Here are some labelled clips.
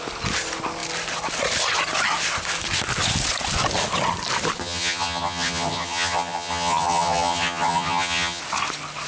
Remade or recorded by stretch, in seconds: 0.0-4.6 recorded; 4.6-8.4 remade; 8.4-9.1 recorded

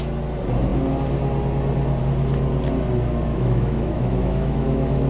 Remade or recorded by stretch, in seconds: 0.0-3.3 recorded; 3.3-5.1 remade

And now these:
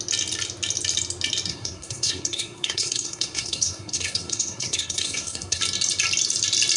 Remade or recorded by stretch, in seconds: 0.0-1.5 recorded; 1.5-5.6 remade; 5.6-6.8 recorded